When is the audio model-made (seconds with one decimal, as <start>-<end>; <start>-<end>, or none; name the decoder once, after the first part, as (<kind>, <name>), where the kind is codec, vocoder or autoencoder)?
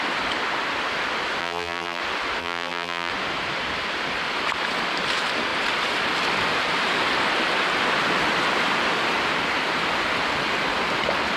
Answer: 1.4-2.0 (vocoder, BigVGAN v2); 2.4-3.1